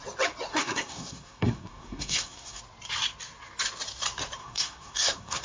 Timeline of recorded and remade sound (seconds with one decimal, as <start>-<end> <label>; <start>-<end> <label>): 0.0-0.5 recorded; 0.5-2.6 remade; 2.6-4.4 recorded; 4.4-5.4 remade